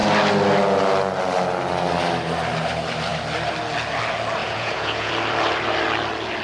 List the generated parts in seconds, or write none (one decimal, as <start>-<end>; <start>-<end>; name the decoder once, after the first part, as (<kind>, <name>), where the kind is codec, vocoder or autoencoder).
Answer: 4.4-5.1 (vocoder, Vocos)